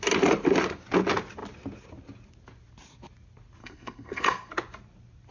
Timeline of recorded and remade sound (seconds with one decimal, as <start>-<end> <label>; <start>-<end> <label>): 0.0-3.6 recorded; 3.6-4.5 remade; 4.5-5.3 recorded